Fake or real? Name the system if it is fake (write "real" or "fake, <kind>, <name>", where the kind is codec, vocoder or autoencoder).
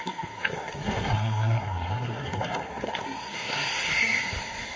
fake, codec, SNAC